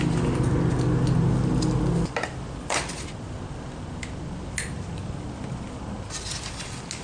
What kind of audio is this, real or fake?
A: real